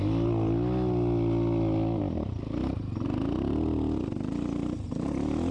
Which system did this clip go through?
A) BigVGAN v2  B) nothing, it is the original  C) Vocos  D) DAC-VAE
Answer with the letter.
B